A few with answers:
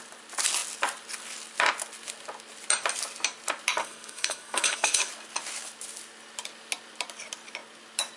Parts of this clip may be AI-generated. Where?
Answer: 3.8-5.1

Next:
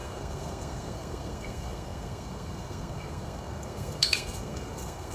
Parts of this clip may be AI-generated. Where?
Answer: 0.0-5.1

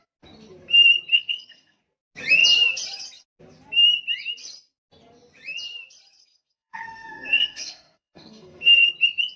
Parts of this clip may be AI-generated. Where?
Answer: 1.1-1.8; 6.2-8.9

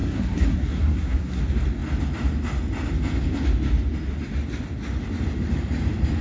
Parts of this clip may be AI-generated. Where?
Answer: 0.0-1.4

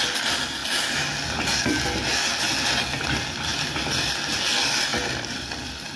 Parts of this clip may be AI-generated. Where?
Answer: none